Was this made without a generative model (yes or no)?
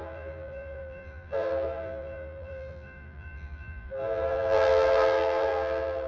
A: no